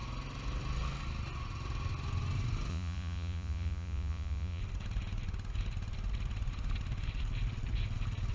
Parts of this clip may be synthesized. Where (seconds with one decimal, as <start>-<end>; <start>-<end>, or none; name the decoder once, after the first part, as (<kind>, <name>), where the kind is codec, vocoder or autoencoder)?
2.7-4.6 (vocoder, Vocos)